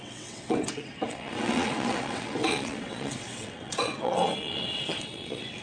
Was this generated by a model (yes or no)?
yes